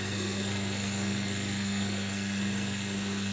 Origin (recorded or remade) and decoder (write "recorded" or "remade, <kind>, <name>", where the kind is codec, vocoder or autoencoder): remade, codec, SNAC